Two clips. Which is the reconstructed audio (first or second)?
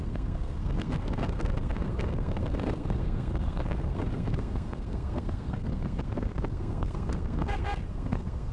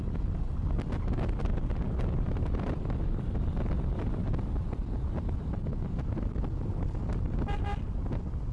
first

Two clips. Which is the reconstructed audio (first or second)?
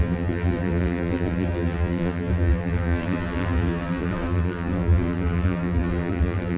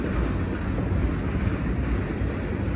first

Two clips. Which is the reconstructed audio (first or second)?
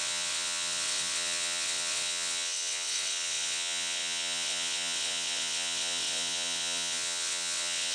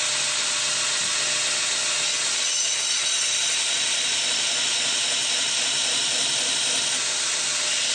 first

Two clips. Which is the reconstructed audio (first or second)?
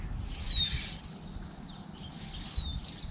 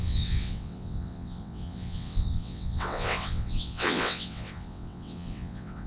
second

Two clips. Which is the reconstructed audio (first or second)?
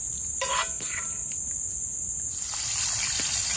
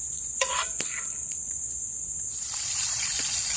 second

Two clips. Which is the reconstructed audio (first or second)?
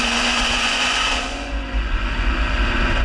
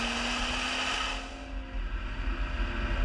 first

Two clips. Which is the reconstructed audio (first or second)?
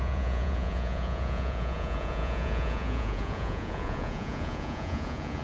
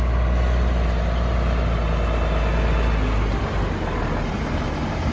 first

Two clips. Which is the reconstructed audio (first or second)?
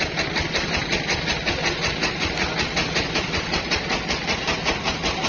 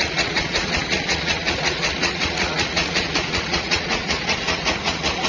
second